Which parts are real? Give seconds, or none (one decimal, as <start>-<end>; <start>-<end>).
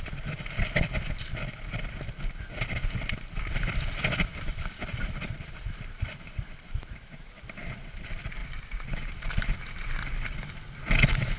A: 0.0-4.3; 7.2-8.4; 10.5-11.4